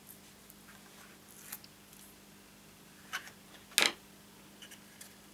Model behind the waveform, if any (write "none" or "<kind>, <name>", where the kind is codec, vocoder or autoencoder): none